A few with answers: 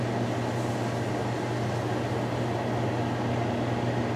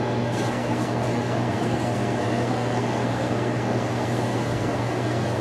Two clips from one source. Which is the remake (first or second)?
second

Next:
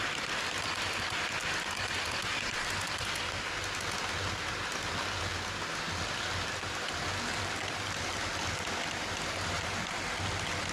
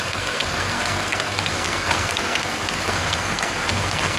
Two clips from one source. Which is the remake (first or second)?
second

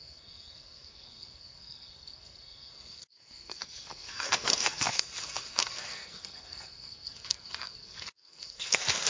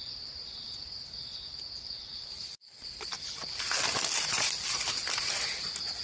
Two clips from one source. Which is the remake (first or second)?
first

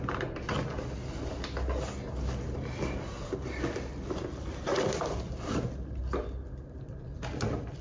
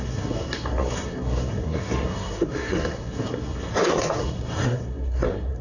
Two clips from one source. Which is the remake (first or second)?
second